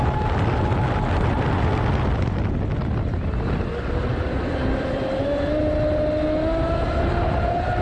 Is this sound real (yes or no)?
yes